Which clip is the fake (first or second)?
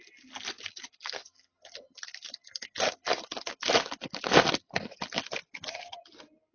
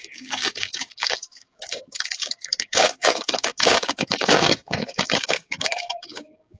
second